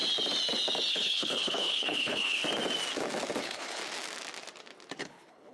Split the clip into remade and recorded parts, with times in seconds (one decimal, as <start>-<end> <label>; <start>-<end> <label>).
0.0-0.9 recorded; 0.9-2.4 remade; 2.4-3.4 recorded; 3.4-3.8 remade; 3.8-5.0 recorded; 5.0-5.5 remade